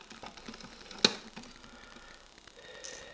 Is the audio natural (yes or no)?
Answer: yes